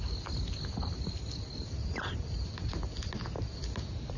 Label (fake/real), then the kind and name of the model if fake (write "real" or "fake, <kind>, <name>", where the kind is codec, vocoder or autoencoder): real